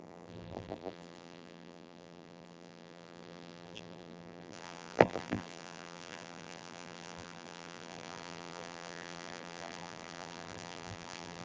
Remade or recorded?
remade